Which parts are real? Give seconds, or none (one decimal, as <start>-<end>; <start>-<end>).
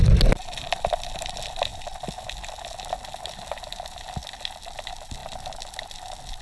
0.0-6.4